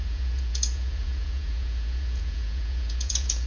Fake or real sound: fake